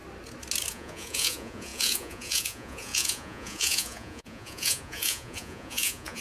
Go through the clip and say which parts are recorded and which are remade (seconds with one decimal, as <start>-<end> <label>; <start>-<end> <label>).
0.0-0.7 recorded; 0.7-6.2 remade